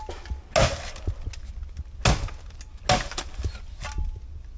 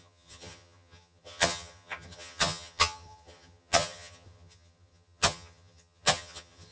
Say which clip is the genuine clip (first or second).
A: first